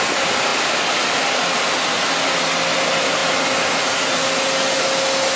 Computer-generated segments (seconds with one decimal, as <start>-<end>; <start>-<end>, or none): none